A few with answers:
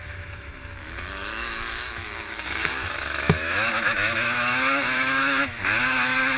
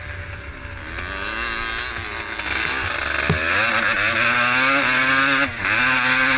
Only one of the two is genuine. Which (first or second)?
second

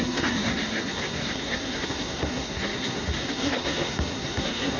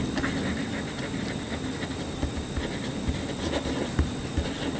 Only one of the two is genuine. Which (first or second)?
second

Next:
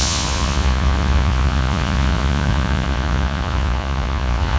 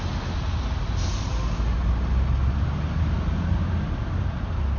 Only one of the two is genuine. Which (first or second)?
second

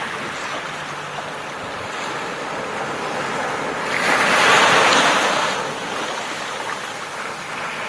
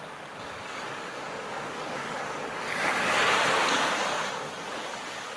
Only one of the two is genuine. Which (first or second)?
first